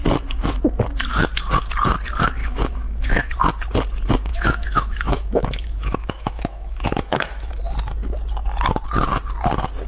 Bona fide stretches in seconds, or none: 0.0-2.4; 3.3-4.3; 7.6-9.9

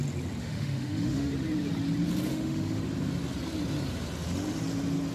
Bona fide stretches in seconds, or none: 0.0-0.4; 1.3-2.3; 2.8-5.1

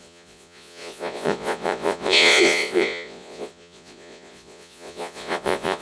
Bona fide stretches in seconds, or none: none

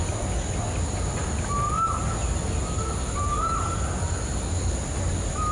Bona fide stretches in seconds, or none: 0.0-5.5

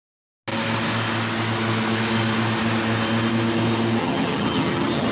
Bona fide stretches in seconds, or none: 0.0-4.0

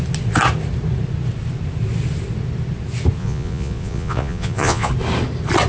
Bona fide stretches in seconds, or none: 0.0-3.2; 4.9-5.7